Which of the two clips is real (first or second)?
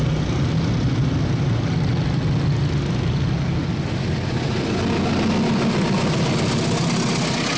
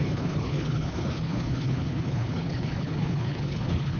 first